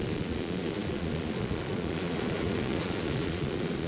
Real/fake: fake